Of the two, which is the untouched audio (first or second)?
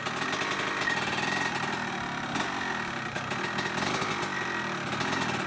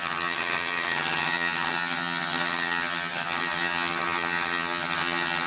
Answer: first